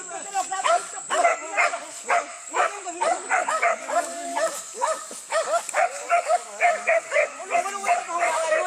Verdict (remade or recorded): remade